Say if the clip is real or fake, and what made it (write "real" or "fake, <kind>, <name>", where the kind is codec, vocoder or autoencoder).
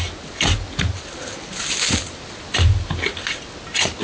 real